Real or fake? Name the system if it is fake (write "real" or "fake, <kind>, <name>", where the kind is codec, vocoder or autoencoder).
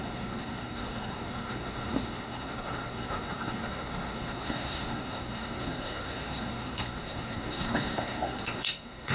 fake, codec, SNAC